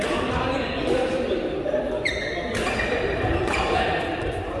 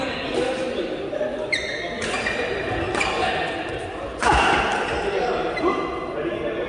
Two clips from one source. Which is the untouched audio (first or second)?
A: second